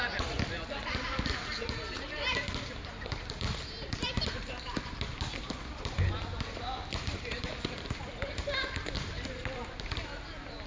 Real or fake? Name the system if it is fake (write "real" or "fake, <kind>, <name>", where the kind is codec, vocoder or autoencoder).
real